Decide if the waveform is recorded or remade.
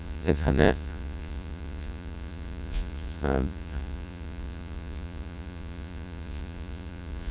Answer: remade